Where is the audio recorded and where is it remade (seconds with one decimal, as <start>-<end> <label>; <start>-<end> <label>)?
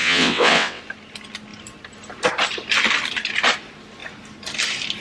0.0-0.8 remade; 0.8-5.0 recorded